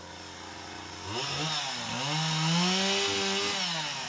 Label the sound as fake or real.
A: real